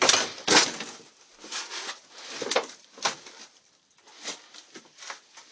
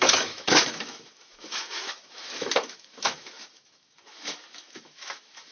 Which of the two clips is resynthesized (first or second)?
second